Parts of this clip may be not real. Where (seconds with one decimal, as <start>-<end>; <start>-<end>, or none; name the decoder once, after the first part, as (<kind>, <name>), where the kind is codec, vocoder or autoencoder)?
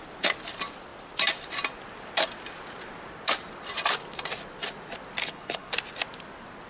5.2-5.7 (codec, HILCodec)